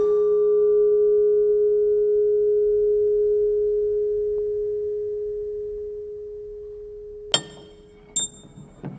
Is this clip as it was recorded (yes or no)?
yes